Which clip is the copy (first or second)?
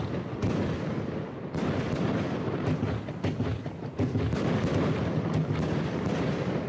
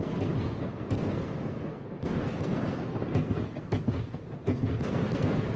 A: second